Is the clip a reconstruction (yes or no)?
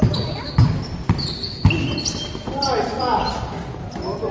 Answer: no